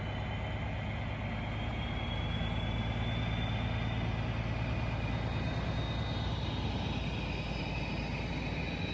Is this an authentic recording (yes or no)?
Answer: yes